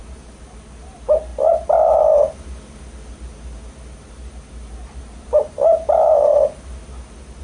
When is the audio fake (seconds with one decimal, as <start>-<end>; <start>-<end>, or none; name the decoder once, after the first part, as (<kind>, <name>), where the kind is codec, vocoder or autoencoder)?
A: 0.0-1.3 (vocoder, BigVGAN v2); 5.0-6.3